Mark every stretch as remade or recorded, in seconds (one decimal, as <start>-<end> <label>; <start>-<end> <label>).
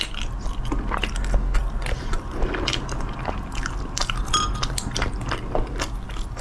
0.0-1.6 recorded; 1.6-2.3 remade; 2.3-4.0 recorded; 4.0-4.5 remade; 4.5-6.4 recorded